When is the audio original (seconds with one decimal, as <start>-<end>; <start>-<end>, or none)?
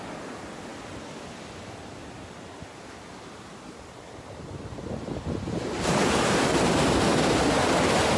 0.0-8.2